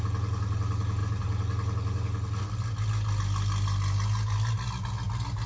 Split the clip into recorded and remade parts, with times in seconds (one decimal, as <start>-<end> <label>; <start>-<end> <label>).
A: 0.0-5.5 recorded